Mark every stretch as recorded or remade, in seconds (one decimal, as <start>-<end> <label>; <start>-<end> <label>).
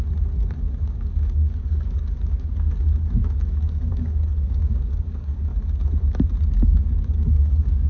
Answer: 0.0-0.6 recorded; 0.6-5.5 remade; 5.5-6.5 recorded; 6.5-7.9 remade